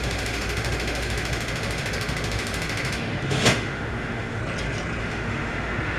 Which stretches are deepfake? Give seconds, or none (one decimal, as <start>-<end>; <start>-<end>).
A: 0.0-4.4; 5.0-6.0